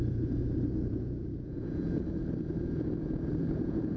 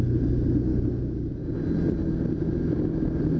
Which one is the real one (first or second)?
second